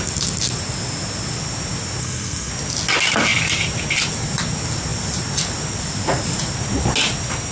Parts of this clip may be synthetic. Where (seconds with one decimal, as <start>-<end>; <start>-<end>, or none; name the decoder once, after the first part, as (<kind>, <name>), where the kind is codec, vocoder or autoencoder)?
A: 2.0-2.5 (codec, SNAC)